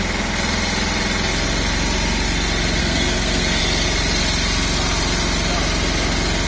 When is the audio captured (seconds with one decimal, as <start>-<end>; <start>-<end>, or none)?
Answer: 0.0-2.8; 3.6-6.5